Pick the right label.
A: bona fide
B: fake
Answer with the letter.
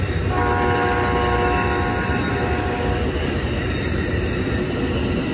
A